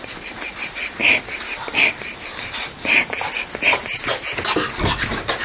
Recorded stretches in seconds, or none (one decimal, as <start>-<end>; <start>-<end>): 0.0-5.4